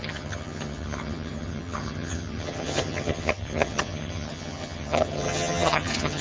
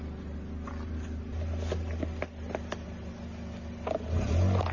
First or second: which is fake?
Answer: first